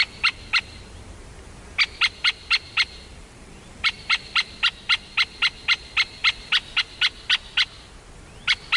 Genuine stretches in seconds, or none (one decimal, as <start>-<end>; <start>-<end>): 0.0-3.1; 4.5-8.8